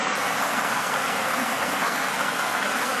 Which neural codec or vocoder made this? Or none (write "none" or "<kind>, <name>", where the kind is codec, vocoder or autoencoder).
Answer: codec, SNAC